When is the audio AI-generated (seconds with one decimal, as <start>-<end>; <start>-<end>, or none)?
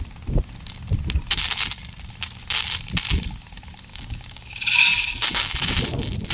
3.9-5.5